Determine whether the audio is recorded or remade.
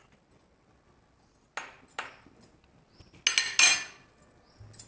recorded